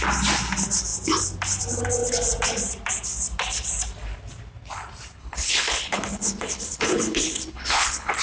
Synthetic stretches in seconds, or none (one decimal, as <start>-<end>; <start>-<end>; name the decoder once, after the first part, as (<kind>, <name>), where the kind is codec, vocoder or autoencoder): 5.2-8.2 (codec, HILCodec)